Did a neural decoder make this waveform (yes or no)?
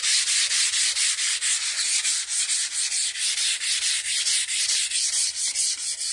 no